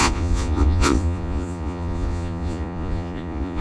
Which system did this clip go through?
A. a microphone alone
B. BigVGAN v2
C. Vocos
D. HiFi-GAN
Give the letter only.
C